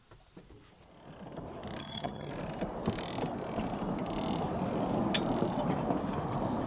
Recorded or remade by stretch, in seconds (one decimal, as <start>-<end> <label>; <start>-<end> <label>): 0.0-1.8 recorded; 1.8-2.3 remade; 2.3-6.7 recorded